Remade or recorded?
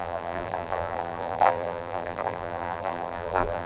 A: remade